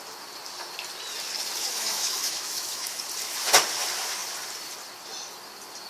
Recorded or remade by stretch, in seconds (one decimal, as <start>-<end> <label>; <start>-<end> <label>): 0.0-1.6 recorded; 1.6-3.0 remade; 3.0-5.9 recorded